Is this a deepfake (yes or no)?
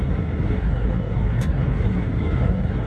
yes